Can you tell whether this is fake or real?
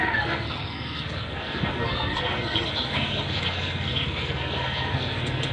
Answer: fake